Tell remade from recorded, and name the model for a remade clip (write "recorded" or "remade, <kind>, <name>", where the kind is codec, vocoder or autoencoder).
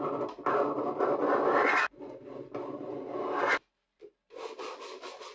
recorded